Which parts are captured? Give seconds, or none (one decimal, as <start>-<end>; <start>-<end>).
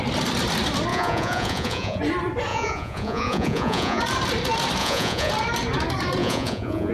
0.0-0.9; 2.0-2.5; 4.0-4.8; 5.3-6.2